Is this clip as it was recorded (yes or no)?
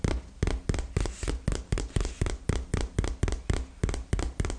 yes